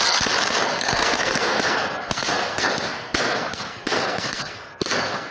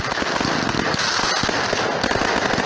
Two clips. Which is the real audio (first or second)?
second